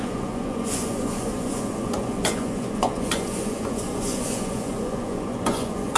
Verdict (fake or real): fake